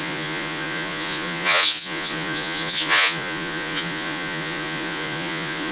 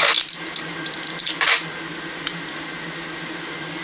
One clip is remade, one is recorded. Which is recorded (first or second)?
second